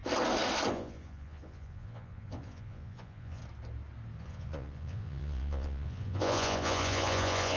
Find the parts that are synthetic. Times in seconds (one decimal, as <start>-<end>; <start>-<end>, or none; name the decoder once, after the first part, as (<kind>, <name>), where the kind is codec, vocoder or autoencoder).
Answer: 0.7-3.4 (vocoder, Vocos); 4.2-7.6